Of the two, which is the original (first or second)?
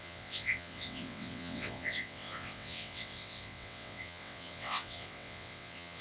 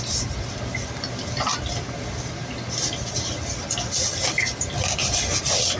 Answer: second